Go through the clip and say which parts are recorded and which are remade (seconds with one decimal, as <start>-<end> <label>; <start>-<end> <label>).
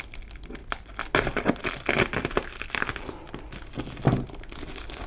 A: 0.0-5.1 recorded